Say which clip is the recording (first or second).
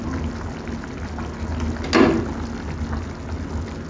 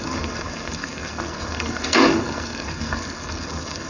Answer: first